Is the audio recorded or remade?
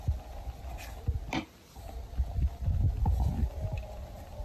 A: recorded